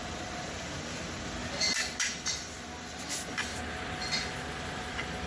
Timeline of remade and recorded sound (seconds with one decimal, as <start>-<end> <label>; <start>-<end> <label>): 0.0-1.4 remade; 1.4-2.0 recorded; 2.0-3.5 remade; 3.5-4.3 recorded; 4.3-5.3 remade